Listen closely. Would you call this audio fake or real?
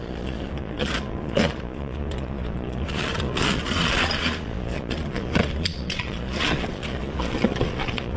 fake